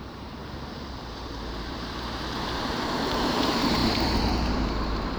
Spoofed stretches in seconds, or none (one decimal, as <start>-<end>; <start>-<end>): 0.0-0.4; 0.9-5.2